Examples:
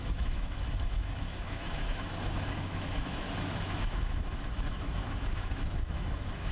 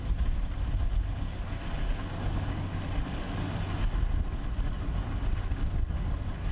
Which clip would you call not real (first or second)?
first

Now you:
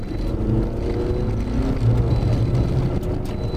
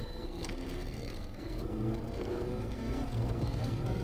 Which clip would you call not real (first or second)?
second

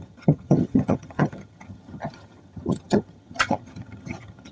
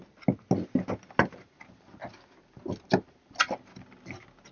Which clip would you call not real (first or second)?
first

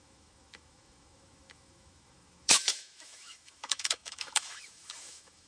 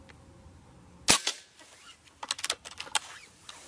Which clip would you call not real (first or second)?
first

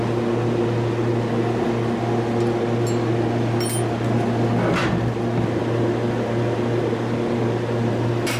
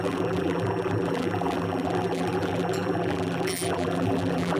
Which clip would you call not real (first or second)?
second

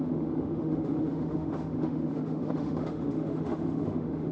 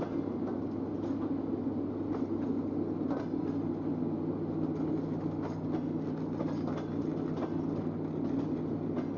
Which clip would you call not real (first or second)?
first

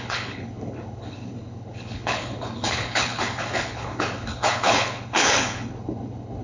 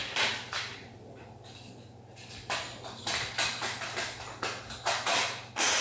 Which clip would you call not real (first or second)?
first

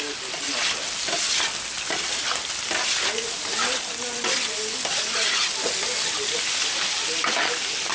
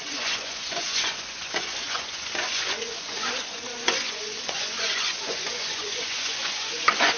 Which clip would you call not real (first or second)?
second